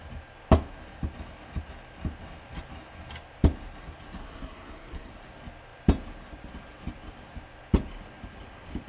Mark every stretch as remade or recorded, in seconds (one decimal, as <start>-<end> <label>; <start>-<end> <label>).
0.0-4.2 recorded; 4.2-5.1 remade; 5.1-8.9 recorded

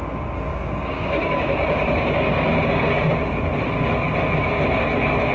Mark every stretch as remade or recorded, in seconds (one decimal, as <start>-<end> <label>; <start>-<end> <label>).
0.0-0.5 recorded; 0.5-3.2 remade; 3.2-5.3 recorded

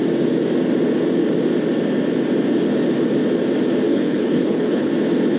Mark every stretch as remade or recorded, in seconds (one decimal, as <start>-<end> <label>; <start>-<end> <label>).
0.0-3.9 recorded; 3.9-4.9 remade; 4.9-5.4 recorded

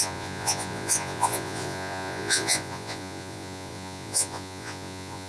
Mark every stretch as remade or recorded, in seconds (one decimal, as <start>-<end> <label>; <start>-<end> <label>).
0.0-5.3 remade

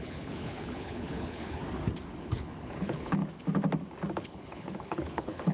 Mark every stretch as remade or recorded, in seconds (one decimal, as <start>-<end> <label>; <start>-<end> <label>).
0.0-1.6 remade; 1.6-2.2 recorded; 2.2-3.2 remade; 3.2-4.2 recorded; 4.2-5.5 remade

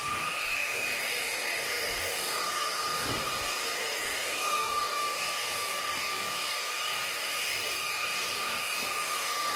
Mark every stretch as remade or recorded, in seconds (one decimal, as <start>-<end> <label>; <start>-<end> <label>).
0.0-9.6 remade